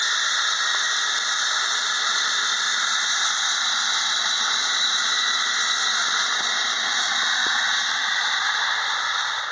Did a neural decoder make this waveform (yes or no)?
no